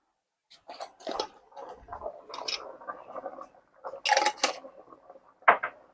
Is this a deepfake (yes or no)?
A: no